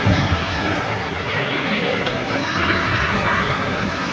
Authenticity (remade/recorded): remade